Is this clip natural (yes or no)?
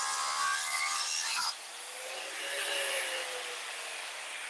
yes